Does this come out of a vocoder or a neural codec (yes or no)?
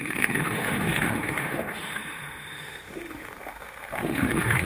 yes